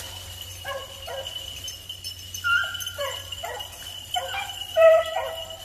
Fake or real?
fake